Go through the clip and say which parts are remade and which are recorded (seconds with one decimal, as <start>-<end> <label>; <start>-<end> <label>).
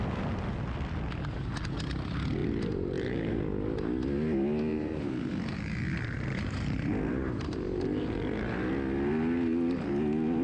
0.0-2.4 recorded; 2.4-3.4 remade; 3.4-4.7 recorded; 4.7-8.7 remade; 8.7-10.4 recorded